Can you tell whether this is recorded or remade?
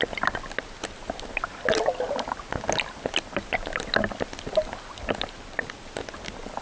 recorded